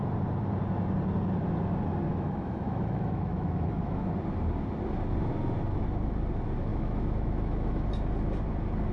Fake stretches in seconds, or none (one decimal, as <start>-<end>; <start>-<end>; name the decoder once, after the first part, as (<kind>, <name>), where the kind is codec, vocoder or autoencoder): 2.1-4.1 (autoencoder, DAC-VAE); 6.7-7.9